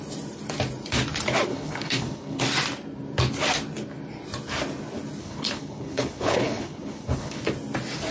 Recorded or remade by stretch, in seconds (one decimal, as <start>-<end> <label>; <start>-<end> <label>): 0.0-1.5 recorded; 1.5-2.4 remade; 2.4-5.2 recorded; 5.2-7.5 remade; 7.5-8.1 recorded